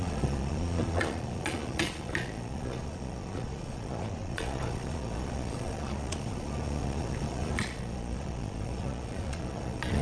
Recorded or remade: remade